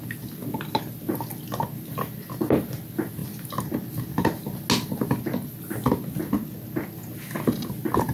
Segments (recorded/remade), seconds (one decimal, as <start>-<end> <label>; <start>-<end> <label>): 0.0-8.1 recorded